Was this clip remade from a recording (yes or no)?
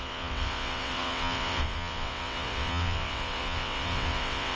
yes